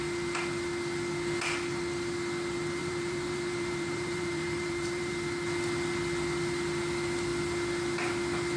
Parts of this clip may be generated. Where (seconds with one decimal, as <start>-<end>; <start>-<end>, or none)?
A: 2.8-5.1